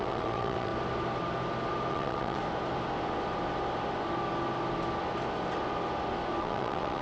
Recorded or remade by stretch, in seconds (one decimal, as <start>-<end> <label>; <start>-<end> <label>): 0.0-0.7 remade; 0.7-1.9 recorded; 1.9-2.4 remade; 2.4-6.4 recorded; 6.4-7.0 remade

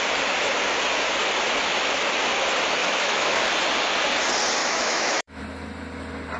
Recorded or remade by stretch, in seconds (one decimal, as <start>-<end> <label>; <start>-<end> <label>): 0.0-2.8 recorded; 2.8-3.4 remade; 3.4-4.6 recorded; 4.6-5.4 remade; 5.4-6.4 recorded

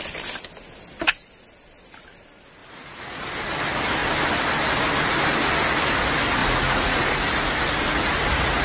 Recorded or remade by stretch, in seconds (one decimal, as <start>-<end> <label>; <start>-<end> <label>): 0.0-2.6 recorded; 2.6-3.3 remade; 3.3-6.4 recorded; 6.4-7.0 remade; 7.0-8.6 recorded

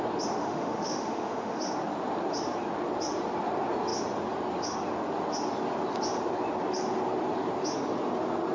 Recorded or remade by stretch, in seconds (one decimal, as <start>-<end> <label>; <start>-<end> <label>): 0.0-0.4 recorded; 0.4-1.6 remade; 1.6-8.5 recorded

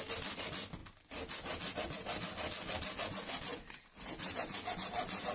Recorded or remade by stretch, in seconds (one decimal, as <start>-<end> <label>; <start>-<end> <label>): 0.0-5.3 recorded